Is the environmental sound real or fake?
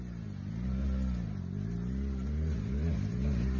real